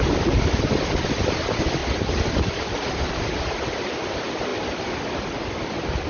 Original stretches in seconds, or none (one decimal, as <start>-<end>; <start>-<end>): 0.0-6.1